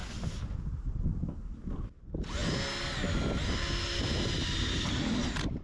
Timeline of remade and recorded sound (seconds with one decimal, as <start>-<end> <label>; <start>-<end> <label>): 0.0-5.6 recorded